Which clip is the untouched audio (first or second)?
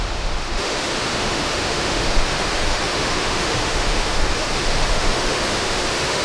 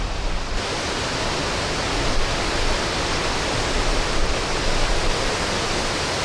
second